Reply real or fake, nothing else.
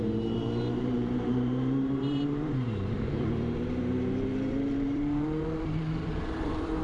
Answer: fake